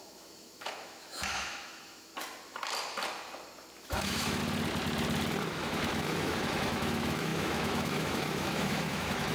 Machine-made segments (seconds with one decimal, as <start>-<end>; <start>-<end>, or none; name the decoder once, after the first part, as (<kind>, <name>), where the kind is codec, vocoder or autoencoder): 0.0-2.1 (autoencoder, DAC-VAE); 3.8-4.4; 5.5-9.3